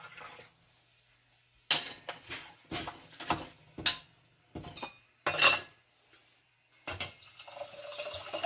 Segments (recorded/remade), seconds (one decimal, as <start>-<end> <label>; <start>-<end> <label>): 0.0-6.2 recorded; 6.2-6.9 remade; 6.9-8.5 recorded